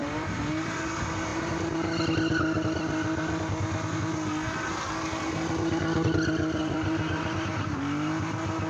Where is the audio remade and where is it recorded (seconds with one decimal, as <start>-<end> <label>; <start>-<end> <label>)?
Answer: 0.0-0.7 remade; 0.7-6.6 recorded; 6.6-7.7 remade; 7.7-8.7 recorded